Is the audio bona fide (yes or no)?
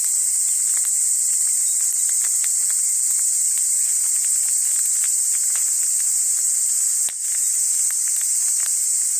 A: yes